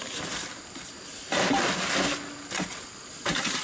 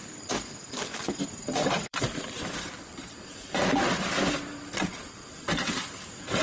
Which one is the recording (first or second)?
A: first